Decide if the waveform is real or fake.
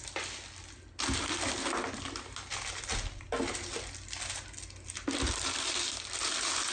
real